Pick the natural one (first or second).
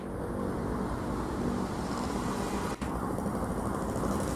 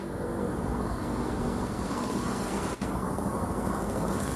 first